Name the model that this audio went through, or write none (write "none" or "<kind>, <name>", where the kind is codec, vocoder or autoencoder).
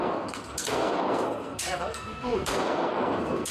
codec, SNAC